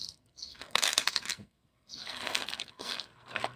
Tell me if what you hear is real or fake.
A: fake